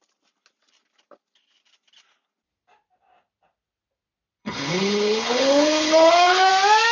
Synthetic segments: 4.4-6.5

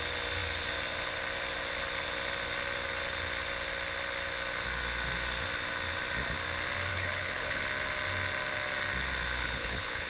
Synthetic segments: 6.9-7.6; 9.4-10.1

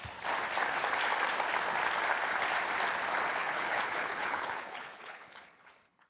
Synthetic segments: 3.4-6.1

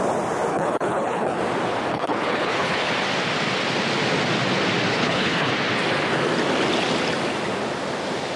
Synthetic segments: 0.5-1.4; 1.9-2.9; 4.9-5.5

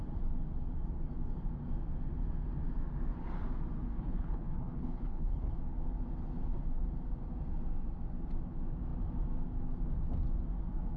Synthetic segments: 3.9-5.6